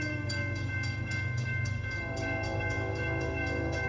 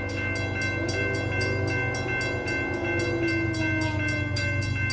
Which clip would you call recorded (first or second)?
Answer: second